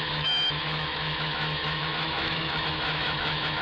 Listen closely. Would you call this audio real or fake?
fake